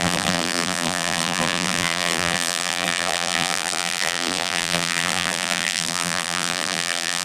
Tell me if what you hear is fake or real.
fake